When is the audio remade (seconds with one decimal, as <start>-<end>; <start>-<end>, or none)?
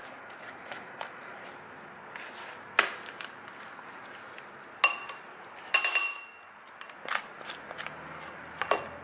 0.0-1.3